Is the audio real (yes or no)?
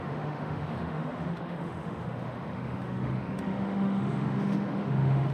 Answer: no